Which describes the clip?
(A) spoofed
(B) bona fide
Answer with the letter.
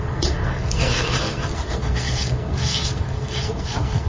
A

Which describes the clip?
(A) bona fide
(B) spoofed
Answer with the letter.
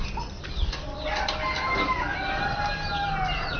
A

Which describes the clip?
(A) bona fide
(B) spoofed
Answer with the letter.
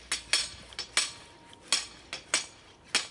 A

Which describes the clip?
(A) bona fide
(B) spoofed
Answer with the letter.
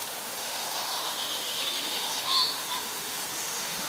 B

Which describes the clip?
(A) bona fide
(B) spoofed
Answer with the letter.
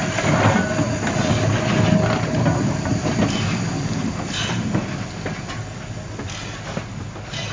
A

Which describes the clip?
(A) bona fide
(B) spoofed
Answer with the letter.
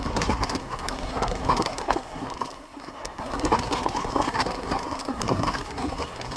B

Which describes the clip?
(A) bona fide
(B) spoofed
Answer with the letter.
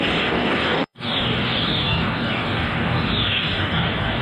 B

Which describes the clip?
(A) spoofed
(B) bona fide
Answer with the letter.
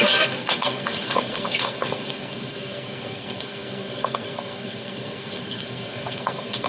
A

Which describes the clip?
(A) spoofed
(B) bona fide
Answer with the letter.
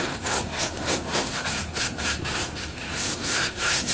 A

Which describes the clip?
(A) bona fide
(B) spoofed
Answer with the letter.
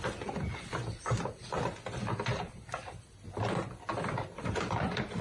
B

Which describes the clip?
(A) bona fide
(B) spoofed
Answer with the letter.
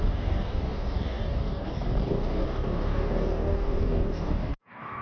B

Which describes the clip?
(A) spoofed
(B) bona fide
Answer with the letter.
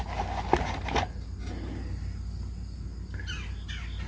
B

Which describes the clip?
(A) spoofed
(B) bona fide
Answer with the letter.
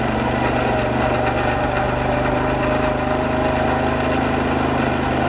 B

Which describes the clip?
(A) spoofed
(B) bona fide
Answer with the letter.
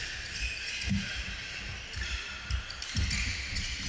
B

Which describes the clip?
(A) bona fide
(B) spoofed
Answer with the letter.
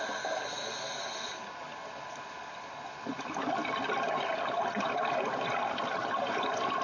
A